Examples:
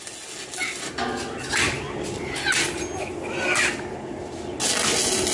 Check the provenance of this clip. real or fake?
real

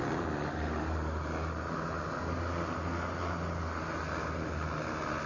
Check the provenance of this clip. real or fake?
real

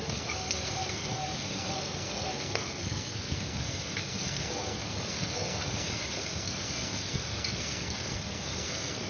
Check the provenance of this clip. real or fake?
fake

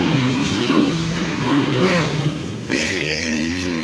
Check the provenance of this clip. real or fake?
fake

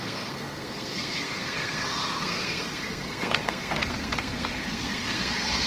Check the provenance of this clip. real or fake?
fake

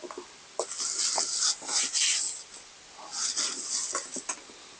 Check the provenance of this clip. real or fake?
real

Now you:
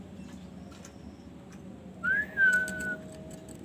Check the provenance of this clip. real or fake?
real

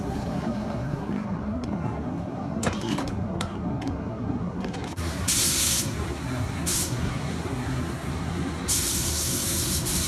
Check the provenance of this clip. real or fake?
fake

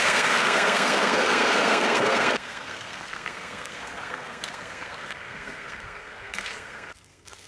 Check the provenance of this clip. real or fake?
fake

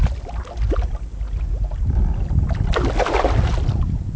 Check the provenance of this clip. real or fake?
real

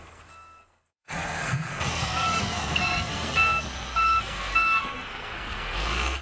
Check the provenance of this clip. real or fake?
fake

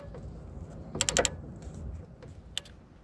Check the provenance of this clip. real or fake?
real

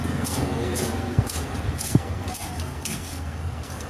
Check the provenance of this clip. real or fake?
fake